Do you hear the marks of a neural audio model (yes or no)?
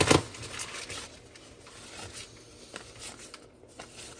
no